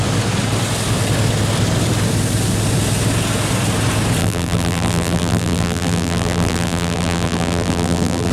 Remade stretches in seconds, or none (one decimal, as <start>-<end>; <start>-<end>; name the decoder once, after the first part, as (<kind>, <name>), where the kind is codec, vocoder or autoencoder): 4.2-8.3 (vocoder, BigVGAN v2)